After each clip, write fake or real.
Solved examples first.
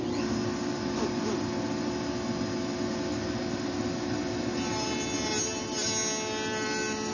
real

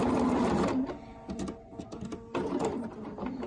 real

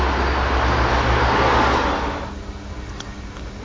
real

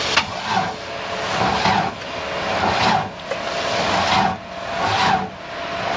real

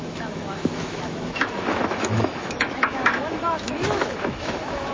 fake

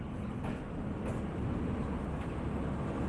real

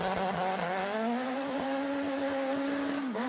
real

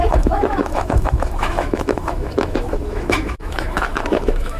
fake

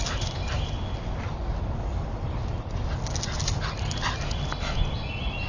real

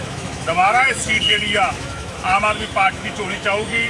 fake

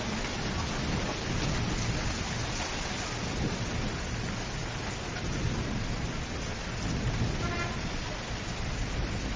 real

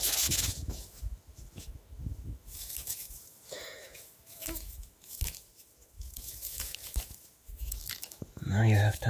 fake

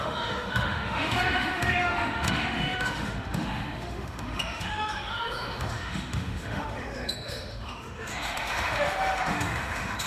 fake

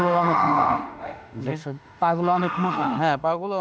fake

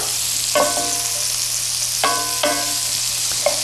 real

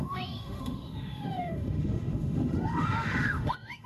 fake